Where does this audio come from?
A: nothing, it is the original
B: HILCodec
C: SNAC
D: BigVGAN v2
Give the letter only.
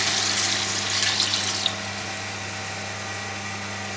A